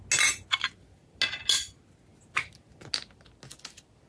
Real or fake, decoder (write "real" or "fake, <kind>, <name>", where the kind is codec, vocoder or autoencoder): real